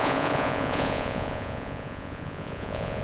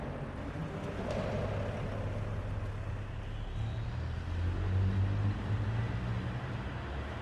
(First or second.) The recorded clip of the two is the second